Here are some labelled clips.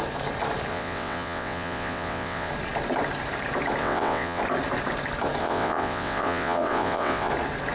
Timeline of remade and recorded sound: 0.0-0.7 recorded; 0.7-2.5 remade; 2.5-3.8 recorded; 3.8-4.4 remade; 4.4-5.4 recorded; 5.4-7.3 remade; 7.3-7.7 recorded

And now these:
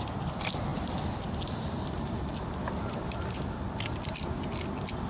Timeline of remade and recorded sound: 0.0-5.1 recorded

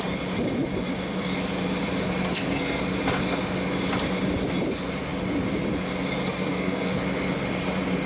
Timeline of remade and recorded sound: 0.0-2.3 recorded; 2.3-2.8 remade; 2.8-6.2 recorded; 6.2-6.9 remade; 6.9-8.1 recorded

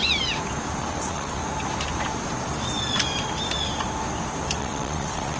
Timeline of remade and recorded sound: 0.0-0.8 recorded; 0.8-1.4 remade; 1.4-4.6 recorded; 4.6-5.4 remade

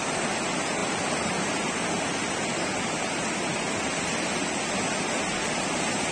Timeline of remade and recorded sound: 0.0-6.1 recorded